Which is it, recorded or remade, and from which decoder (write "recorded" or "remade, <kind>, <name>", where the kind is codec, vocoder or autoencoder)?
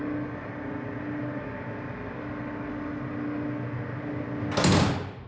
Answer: recorded